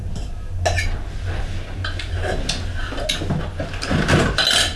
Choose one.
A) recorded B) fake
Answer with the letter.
A